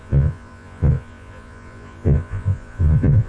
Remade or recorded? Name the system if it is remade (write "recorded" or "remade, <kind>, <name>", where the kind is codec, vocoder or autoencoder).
remade, vocoder, Vocos